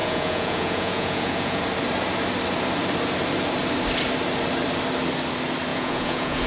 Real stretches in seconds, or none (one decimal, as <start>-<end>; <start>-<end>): 1.6-5.7